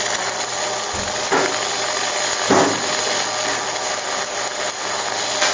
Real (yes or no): yes